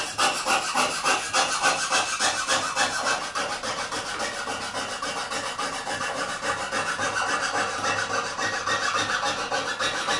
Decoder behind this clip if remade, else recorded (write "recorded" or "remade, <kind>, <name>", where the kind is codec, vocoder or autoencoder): recorded